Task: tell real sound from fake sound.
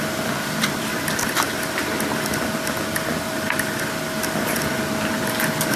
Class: real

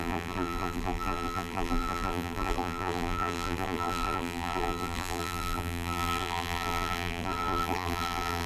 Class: fake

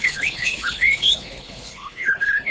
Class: fake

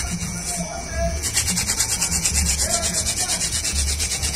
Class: fake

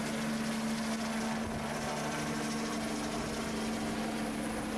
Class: real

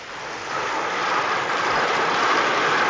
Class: real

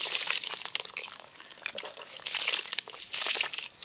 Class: fake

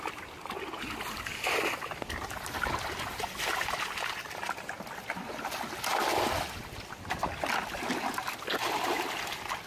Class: real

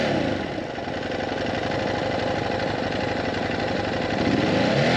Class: real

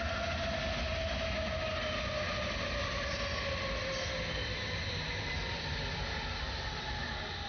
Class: real